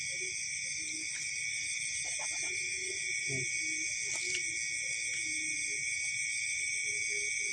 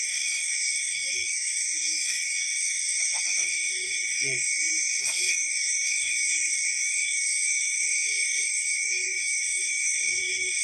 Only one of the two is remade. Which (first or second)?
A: second